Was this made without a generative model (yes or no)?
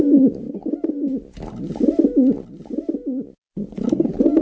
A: yes